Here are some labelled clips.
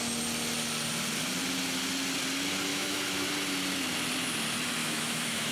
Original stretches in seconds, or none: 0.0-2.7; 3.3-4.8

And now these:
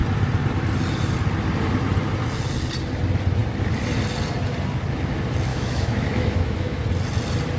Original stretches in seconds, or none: 0.0-5.5; 6.8-7.6

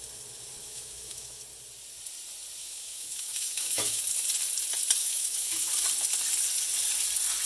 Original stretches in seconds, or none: 0.0-0.6; 1.4-2.6; 4.0-5.0; 5.7-7.5

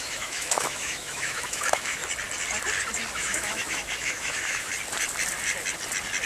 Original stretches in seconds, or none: 2.0-3.1; 4.7-6.3

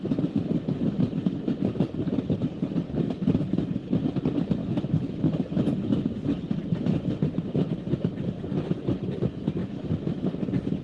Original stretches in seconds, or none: 0.0-4.6; 5.1-9.6; 10.3-10.8

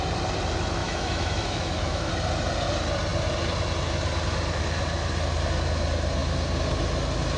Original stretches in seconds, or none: 0.0-0.8; 2.1-7.4

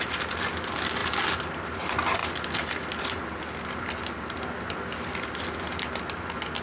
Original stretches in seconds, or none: 0.0-6.6

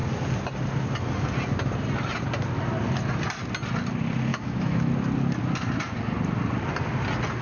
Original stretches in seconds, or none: 0.0-4.3; 4.9-7.4